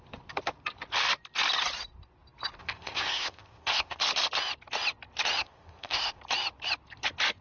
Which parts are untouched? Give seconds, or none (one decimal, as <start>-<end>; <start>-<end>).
0.0-2.6; 4.0-5.4; 6.2-7.4